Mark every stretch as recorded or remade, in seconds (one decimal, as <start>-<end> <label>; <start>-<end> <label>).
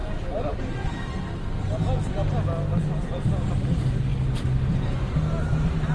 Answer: 0.0-5.9 recorded